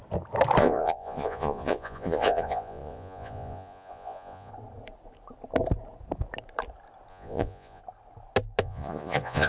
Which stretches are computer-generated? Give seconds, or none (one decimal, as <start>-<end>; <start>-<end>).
0.6-4.5; 7.1-7.8; 8.6-9.5